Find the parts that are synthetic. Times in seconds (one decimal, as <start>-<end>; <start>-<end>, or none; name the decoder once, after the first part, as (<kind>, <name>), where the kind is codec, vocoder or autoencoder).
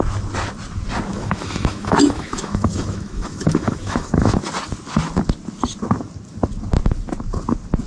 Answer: 1.1-4.4 (autoencoder, DAC-VAE)